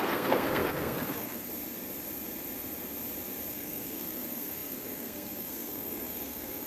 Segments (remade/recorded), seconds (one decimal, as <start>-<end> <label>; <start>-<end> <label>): 0.0-1.5 remade; 1.5-3.5 recorded; 3.5-6.7 remade